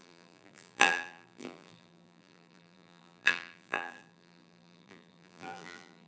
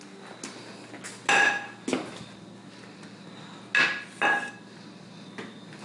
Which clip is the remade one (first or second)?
first